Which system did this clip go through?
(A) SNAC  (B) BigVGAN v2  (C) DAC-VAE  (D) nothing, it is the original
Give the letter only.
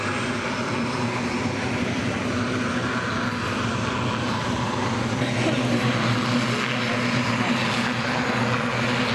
D